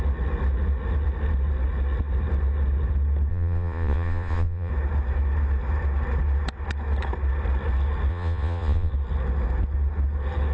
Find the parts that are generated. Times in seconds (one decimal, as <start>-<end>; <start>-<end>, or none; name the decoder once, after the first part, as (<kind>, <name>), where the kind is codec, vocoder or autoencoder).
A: 3.3-4.7 (vocoder, Vocos); 8.1-8.9